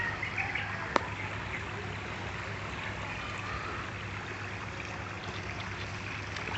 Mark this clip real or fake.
real